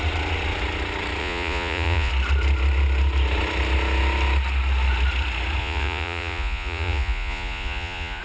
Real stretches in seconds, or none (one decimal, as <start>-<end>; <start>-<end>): 0.0-1.2; 2.1-5.6